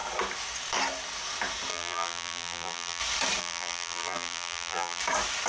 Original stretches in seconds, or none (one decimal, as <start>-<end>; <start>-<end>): 0.0-1.7; 3.0-3.4; 5.0-5.5